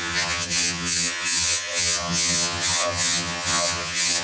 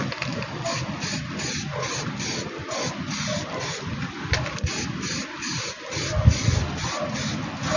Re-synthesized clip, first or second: first